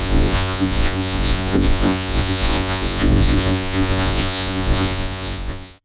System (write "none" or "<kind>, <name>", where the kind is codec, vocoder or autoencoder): vocoder, Vocos